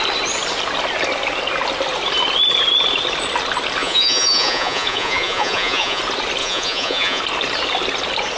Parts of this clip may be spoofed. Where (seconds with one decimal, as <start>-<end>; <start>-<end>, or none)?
3.8-6.0; 6.4-7.2